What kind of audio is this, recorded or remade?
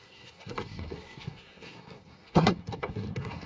remade